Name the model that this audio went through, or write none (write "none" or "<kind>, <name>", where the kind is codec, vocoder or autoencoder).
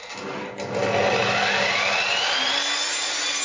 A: none